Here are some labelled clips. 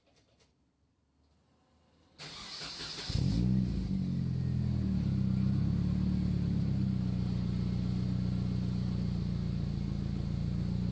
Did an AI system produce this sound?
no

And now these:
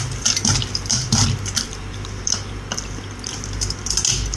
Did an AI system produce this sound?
yes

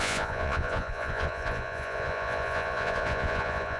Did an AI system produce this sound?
yes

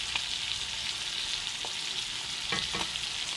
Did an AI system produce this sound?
no